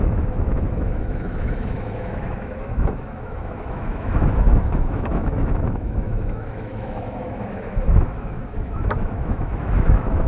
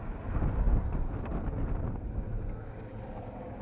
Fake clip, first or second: first